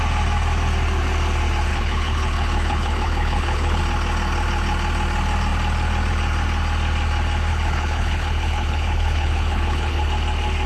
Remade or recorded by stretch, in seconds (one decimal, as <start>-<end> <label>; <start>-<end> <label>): 0.0-1.7 recorded; 1.7-3.8 remade; 3.8-7.5 recorded; 7.5-10.1 remade; 10.1-10.7 recorded